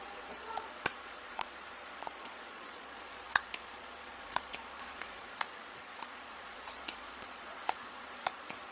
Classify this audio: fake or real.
fake